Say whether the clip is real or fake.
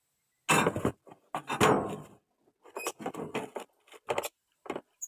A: real